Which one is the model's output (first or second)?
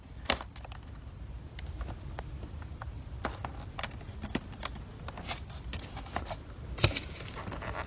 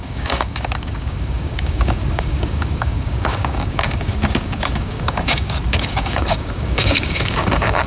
second